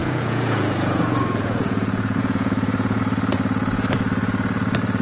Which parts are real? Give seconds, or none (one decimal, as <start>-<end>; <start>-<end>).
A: 3.0-5.0